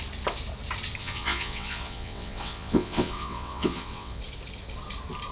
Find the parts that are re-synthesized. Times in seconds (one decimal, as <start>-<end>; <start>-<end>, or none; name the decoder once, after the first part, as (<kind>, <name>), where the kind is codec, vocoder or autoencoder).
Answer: 1.0-4.2 (vocoder, WaveNeXt)